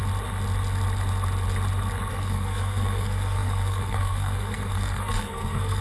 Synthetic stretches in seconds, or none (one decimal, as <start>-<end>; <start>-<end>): 2.1-5.8